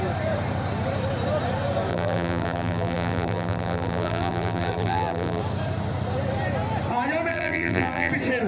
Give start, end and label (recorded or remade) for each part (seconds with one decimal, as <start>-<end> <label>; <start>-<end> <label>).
0.0-1.9 recorded; 1.9-5.4 remade; 5.4-7.3 recorded; 7.3-8.1 remade; 8.1-8.5 recorded